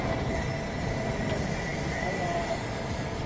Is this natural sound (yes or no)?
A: yes